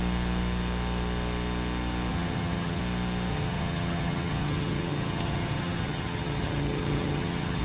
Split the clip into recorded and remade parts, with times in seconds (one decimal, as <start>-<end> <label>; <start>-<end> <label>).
0.0-2.1 recorded; 2.1-2.8 remade; 2.8-3.3 recorded; 3.3-7.6 remade